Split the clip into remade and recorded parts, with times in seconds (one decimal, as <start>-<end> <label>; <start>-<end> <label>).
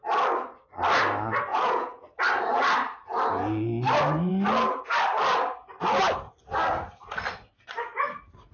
0.0-1.5 recorded; 1.5-2.2 remade; 2.2-8.5 recorded